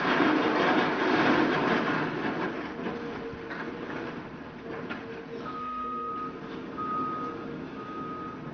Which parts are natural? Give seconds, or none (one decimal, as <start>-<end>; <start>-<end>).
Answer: 0.0-5.6; 6.1-8.5